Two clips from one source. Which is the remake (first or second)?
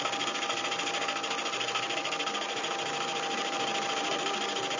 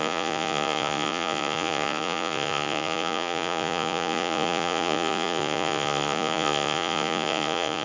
second